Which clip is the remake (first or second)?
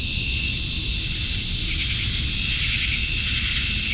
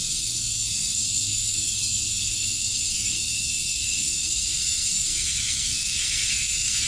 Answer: second